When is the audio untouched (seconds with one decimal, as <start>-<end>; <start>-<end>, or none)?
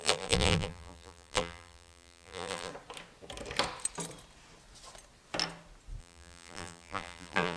2.7-6.0